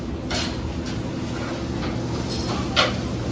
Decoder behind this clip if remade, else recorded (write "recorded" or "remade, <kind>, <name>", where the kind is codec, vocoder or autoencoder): recorded